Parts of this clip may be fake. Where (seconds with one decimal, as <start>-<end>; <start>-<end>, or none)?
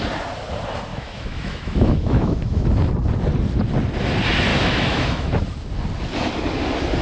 0.9-2.7; 4.5-5.3